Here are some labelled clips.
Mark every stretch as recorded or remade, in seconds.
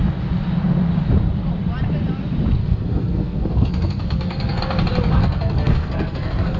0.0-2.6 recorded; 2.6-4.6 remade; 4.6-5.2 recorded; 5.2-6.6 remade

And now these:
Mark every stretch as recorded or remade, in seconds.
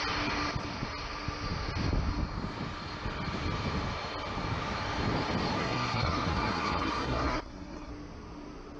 0.0-5.6 recorded; 5.6-7.9 remade; 7.9-8.8 recorded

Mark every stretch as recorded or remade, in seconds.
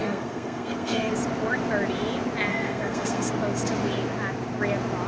0.0-1.1 remade; 1.1-2.5 recorded; 2.5-3.3 remade; 3.3-5.1 recorded